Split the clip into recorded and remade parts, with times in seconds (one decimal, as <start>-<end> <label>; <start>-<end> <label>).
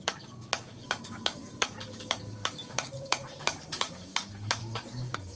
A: 0.0-5.4 remade